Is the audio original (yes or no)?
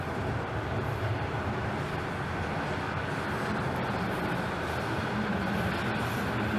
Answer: yes